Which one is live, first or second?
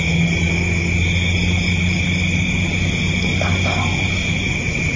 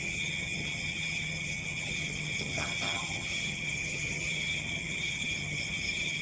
first